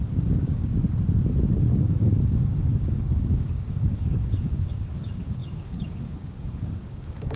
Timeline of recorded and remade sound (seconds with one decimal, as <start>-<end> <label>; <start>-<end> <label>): 0.0-0.7 remade; 0.7-1.6 recorded; 1.6-7.4 remade